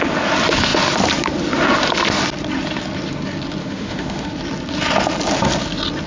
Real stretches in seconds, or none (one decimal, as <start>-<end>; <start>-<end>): 0.0-3.6; 4.3-6.1